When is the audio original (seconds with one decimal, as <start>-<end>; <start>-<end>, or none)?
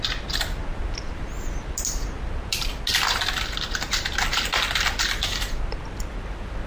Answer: 0.0-6.7